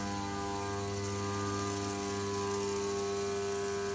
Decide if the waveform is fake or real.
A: real